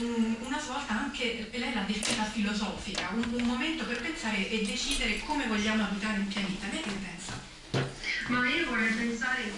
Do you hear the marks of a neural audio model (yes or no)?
no